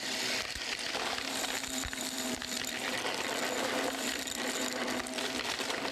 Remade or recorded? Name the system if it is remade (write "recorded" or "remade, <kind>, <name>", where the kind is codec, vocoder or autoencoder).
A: remade, vocoder, BigVGAN v2